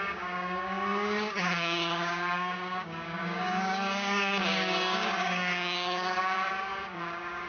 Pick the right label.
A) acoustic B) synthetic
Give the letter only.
B